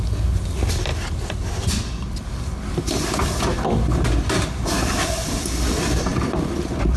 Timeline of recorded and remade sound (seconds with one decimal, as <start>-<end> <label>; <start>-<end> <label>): 0.0-7.0 recorded